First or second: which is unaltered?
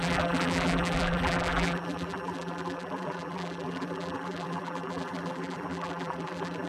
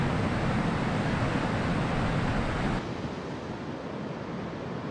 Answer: second